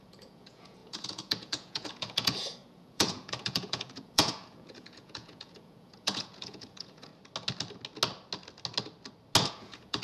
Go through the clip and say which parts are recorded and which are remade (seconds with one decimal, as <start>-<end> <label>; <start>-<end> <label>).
0.0-7.1 remade; 7.1-9.5 recorded; 9.5-10.0 remade